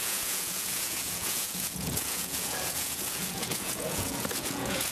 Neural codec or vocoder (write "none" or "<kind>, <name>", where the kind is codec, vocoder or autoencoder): vocoder, Vocos